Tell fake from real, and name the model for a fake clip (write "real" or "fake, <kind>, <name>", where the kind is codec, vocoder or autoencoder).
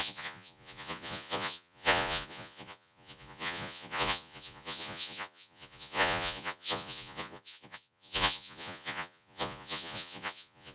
fake, vocoder, Vocos